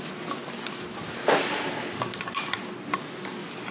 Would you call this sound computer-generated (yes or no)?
no